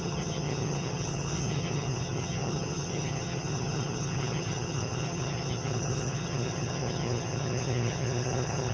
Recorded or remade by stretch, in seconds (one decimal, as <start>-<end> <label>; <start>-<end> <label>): 0.0-8.7 remade